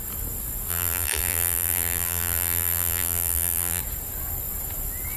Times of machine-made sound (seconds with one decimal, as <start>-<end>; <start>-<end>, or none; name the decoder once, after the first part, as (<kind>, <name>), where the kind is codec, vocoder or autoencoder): 0.7-3.8 (vocoder, BigVGAN v2)